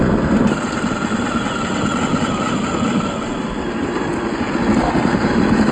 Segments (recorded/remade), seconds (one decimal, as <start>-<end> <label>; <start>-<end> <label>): 0.0-5.7 recorded